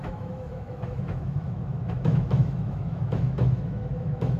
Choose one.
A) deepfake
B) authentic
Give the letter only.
A